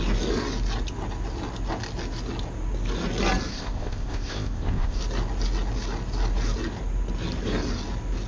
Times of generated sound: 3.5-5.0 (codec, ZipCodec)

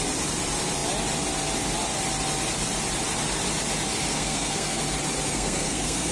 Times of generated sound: 4.1-4.8 (codec, SNAC); 5.3-6.1

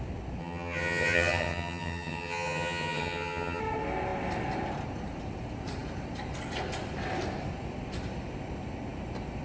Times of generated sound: 0.4-3.6 (vocoder, HiFi-GAN)

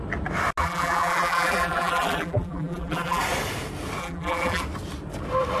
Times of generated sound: 0.6-3.2 (vocoder, BigVGAN v2); 4.0-4.6

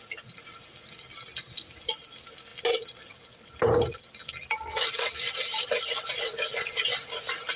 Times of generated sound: none

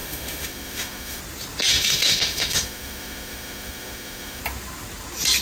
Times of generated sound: 0.0-1.2 (autoencoder, DAC-VAE); 1.7-4.4

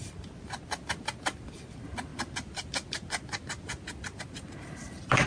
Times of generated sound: none

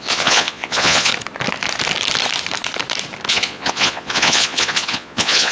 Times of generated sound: 0.0-1.1 (vocoder, Vocos); 3.3-5.5